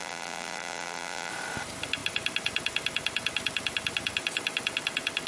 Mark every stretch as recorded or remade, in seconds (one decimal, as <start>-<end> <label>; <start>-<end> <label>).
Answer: 0.0-1.3 remade; 1.3-5.3 recorded